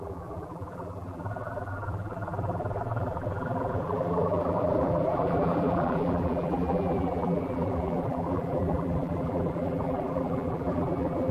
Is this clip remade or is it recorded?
remade